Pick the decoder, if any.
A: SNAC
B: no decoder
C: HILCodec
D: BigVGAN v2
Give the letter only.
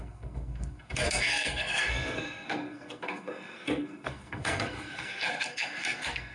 A